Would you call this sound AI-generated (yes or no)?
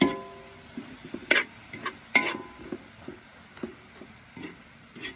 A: no